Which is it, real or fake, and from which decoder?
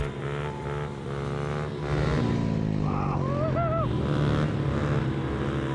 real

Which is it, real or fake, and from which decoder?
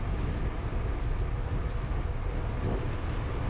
real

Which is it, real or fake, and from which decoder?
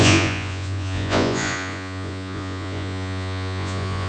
fake, vocoder, Vocos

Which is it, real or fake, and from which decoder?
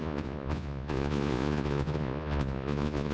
fake, vocoder, Vocos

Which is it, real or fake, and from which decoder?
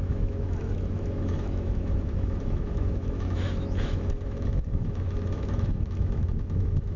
fake, autoencoder, DAC-VAE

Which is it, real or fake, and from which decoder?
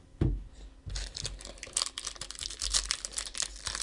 real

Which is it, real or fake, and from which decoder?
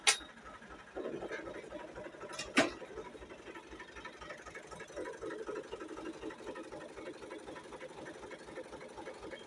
real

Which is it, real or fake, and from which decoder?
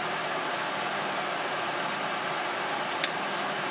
real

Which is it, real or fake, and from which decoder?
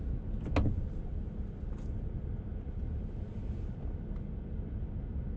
real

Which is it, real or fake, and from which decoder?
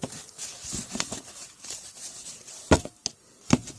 fake, vocoder, BigVGAN v2